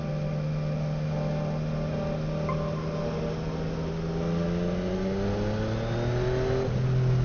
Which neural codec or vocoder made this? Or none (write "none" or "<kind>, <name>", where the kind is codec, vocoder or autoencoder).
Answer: none